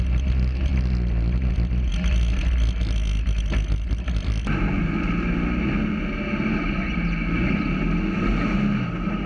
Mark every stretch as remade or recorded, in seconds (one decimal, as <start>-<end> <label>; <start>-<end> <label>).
0.0-9.3 recorded